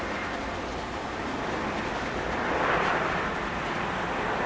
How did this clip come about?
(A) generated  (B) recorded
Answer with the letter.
B